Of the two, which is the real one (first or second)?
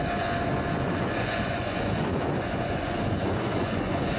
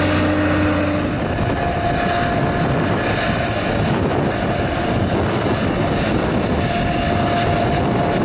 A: second